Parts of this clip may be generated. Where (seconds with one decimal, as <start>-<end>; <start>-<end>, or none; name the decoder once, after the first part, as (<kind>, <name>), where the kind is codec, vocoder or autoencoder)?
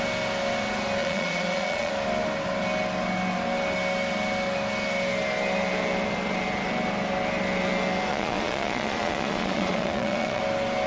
1.0-1.9 (vocoder, Vocos); 8.1-10.4